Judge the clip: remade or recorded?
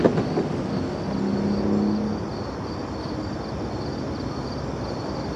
recorded